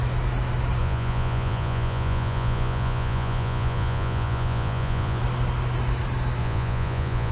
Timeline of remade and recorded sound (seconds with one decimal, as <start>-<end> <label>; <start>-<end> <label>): 0.0-0.8 recorded; 0.8-5.2 remade; 5.2-6.4 recorded; 6.4-7.3 remade